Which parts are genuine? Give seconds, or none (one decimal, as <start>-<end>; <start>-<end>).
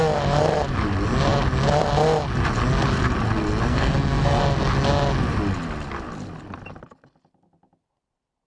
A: 0.0-3.7; 4.4-8.5